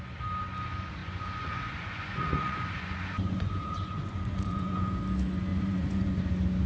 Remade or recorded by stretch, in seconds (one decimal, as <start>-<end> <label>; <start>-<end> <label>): 0.0-1.0 recorded; 1.0-5.0 remade; 5.0-5.5 recorded; 5.5-6.1 remade; 6.1-6.7 recorded